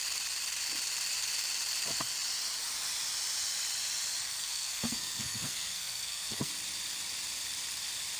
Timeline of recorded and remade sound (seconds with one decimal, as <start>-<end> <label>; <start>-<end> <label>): 0.0-4.2 recorded; 4.2-6.5 remade; 6.5-8.2 recorded